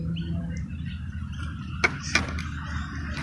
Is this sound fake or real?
real